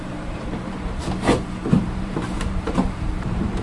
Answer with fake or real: fake